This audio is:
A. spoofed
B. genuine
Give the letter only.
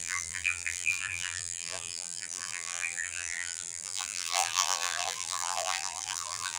A